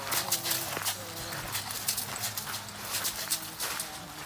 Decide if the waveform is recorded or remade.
recorded